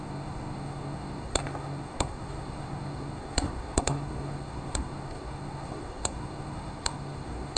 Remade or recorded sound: remade